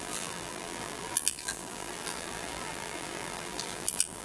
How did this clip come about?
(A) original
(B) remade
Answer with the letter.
B